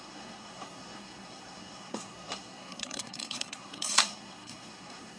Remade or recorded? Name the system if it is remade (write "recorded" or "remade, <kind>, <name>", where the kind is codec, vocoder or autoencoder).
remade, codec, SNAC